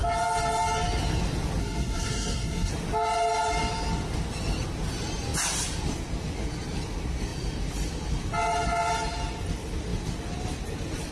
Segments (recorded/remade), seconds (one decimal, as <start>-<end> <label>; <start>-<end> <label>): 0.0-1.6 recorded; 1.6-2.7 remade; 2.7-11.1 recorded